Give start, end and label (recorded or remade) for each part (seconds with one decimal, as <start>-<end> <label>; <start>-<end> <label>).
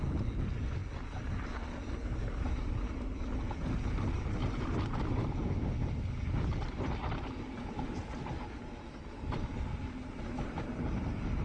0.0-11.4 recorded